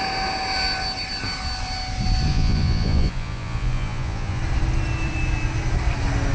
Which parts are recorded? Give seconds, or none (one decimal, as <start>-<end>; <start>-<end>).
0.0-2.3; 4.4-6.3